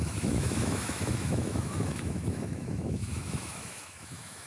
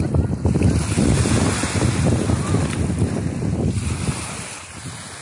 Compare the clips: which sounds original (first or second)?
second